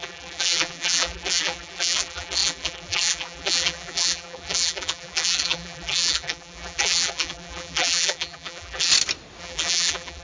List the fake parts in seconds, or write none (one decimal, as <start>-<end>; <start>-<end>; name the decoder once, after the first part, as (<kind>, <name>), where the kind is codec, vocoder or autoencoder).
0.0-8.9 (vocoder, BigVGAN v2); 9.4-10.2

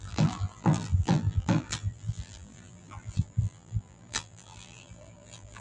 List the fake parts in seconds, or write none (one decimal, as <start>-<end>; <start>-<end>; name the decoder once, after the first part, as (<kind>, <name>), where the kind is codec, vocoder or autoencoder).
0.0-5.6 (vocoder, BigVGAN v2)

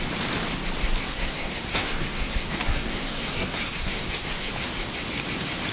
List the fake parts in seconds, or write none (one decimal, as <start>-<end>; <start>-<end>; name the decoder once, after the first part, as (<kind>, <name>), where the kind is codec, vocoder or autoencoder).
1.1-4.5 (codec, SNAC)

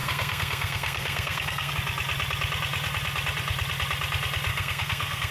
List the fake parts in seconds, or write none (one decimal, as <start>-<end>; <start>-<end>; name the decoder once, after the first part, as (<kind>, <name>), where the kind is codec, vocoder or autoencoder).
0.0-1.7 (codec, SNAC); 4.5-5.3

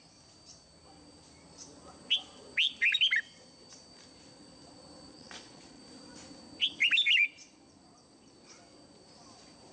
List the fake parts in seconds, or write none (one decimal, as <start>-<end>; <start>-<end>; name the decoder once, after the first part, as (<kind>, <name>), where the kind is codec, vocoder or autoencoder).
5.1-5.8 (vocoder, Vocos)

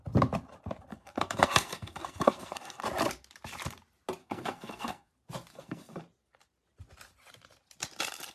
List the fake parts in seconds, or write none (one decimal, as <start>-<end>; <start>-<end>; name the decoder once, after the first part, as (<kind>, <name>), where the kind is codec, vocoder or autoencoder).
0.9-2.8 (codec, SNAC); 4.2-5.1; 5.5-6.0

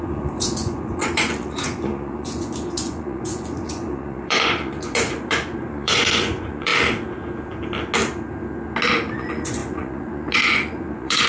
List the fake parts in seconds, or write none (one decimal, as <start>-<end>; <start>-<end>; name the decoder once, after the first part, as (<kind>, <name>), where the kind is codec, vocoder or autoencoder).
0.0-6.7 (vocoder, Vocos); 9.1-11.3

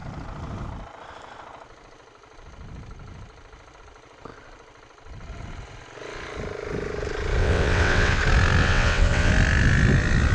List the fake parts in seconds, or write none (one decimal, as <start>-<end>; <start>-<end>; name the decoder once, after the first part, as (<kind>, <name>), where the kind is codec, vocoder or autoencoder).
7.4-8.2 (vocoder, WaveNeXt); 8.6-9.3